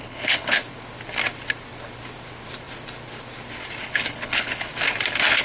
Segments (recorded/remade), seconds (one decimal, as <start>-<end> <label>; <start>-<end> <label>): 0.0-0.6 remade; 0.6-3.8 recorded; 3.8-4.7 remade; 4.7-5.4 recorded